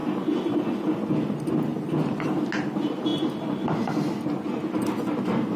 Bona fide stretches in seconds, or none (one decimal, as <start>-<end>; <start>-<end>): 0.0-5.6